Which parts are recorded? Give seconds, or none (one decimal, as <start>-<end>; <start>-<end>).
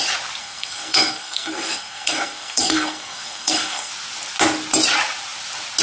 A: 0.0-0.4; 3.9-5.8